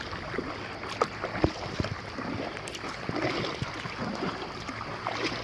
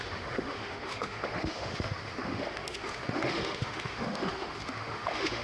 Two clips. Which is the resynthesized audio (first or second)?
second